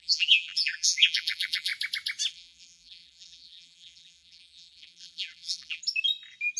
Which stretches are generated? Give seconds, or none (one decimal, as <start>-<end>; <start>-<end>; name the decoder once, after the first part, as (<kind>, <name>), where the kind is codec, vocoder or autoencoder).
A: 0.0-1.7 (vocoder, BigVGAN v2); 2.3-5.8

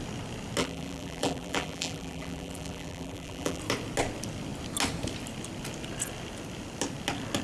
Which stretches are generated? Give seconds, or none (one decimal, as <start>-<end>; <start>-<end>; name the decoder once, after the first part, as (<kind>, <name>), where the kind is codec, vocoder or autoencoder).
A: 0.6-3.6 (vocoder, BigVGAN v2)

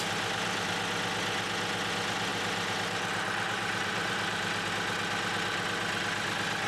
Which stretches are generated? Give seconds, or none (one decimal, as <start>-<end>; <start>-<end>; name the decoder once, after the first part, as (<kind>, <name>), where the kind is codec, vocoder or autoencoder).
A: 0.0-0.7 (vocoder, BigVGAN v2); 2.3-4.7

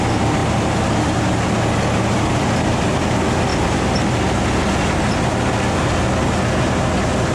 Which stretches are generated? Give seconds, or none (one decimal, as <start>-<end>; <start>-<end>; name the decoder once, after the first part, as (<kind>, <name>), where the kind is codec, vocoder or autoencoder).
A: none

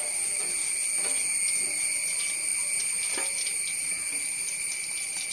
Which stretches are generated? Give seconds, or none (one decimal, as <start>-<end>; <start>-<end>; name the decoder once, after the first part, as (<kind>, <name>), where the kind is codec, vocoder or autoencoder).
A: none

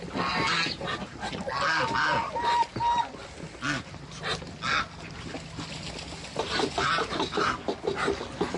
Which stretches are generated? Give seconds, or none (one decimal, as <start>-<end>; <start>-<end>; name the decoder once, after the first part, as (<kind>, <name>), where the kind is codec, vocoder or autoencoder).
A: 6.3-7.5 (vocoder, BigVGAN v2)